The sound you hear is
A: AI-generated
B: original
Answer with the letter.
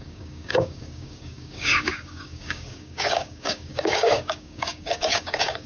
A